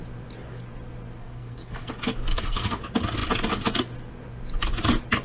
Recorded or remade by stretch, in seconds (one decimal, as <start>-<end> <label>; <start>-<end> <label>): 0.0-1.2 recorded; 1.2-1.9 remade; 1.9-2.3 recorded; 2.3-2.8 remade; 2.8-5.2 recorded